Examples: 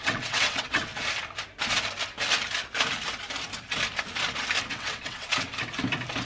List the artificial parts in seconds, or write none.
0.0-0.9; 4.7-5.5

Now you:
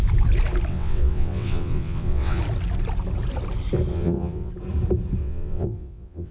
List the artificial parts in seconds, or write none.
0.7-2.4; 3.9-4.5; 5.2-6.3

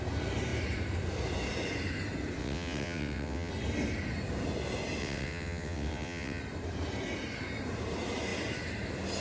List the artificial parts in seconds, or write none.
2.4-3.5; 5.0-6.4